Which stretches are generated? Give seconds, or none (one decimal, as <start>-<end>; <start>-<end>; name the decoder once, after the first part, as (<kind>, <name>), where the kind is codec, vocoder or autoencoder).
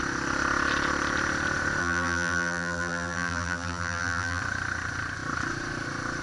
1.8-4.4 (vocoder, BigVGAN v2)